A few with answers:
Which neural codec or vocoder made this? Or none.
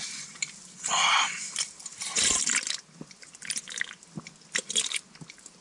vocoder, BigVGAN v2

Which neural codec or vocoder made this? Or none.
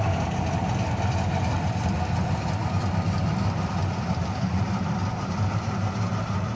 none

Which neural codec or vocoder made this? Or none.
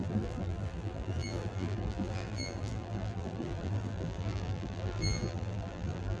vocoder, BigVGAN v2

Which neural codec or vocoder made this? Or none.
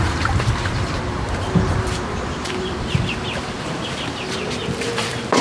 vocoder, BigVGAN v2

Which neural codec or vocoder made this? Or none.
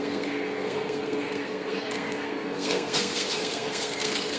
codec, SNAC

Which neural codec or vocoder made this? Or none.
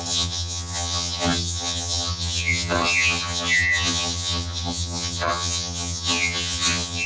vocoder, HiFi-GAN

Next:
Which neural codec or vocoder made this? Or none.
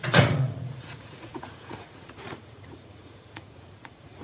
vocoder, Vocos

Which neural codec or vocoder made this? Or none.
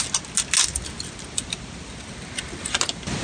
none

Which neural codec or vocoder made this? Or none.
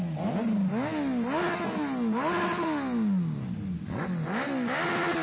none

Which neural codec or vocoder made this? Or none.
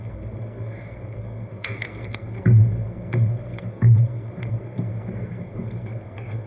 codec, SNAC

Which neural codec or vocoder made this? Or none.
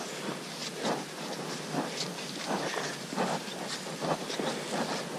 none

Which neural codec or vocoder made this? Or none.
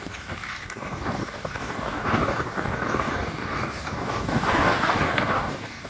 codec, DAC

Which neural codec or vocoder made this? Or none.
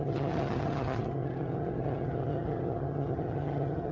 vocoder, HiFi-GAN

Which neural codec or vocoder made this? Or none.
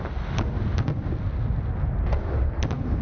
none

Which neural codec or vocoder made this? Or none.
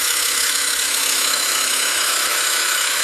autoencoder, DAC-VAE